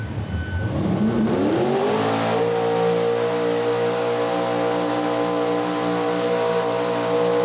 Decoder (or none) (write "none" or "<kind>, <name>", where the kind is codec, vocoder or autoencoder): none